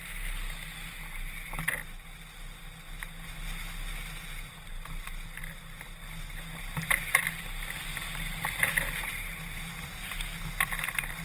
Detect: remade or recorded recorded